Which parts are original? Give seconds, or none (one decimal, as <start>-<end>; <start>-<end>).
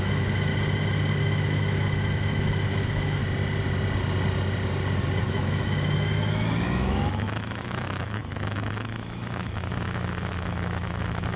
0.5-1.2; 3.2-5.2